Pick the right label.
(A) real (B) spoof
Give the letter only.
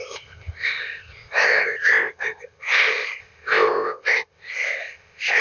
B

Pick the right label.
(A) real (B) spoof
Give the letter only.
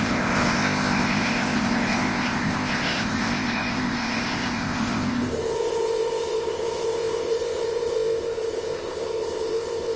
B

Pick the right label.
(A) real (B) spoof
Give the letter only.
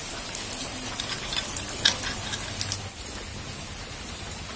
A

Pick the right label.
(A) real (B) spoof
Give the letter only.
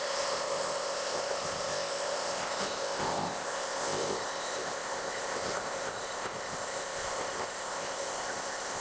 B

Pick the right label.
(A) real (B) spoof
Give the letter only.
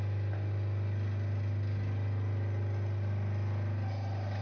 A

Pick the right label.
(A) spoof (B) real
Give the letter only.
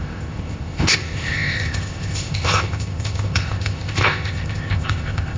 A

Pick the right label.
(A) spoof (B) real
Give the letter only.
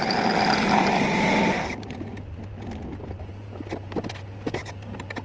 B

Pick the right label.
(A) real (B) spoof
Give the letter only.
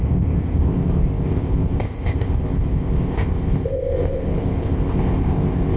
B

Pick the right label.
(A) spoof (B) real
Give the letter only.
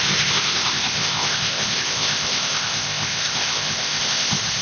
A